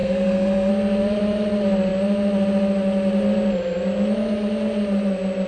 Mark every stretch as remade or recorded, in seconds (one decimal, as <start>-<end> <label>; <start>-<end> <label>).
0.0-0.7 remade; 0.7-5.5 recorded